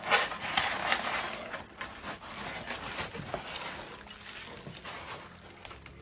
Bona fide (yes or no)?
yes